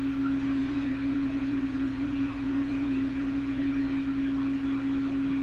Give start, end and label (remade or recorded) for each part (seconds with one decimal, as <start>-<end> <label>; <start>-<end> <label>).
0.0-0.6 recorded; 0.6-3.8 remade; 3.8-5.4 recorded